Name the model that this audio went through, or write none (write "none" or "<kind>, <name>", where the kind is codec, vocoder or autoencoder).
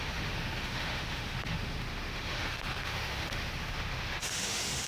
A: autoencoder, DAC-VAE